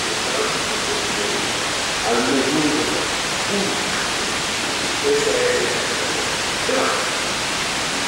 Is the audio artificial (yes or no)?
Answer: no